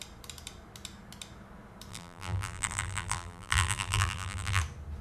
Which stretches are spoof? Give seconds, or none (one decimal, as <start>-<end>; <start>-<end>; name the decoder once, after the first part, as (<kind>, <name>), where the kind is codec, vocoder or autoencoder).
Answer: 1.9-4.6 (vocoder, BigVGAN v2)